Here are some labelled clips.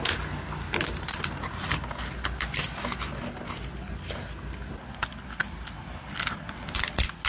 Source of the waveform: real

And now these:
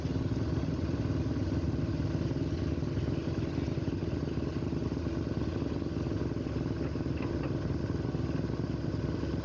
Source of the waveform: real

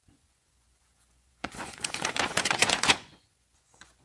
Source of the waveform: fake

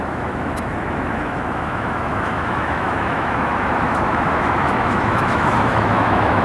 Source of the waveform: fake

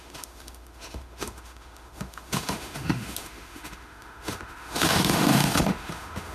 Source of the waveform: fake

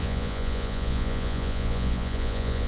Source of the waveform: fake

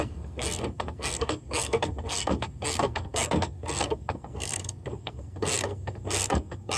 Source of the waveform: fake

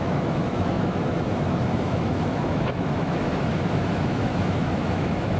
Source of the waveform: fake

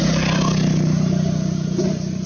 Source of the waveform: real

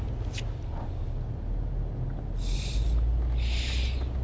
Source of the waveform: real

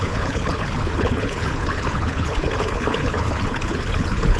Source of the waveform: fake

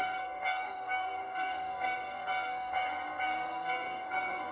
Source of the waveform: fake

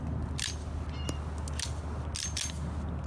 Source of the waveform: real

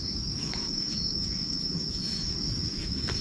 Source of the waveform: fake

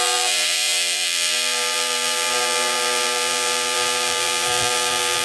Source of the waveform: fake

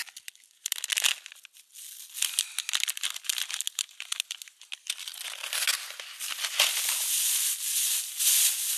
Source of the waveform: real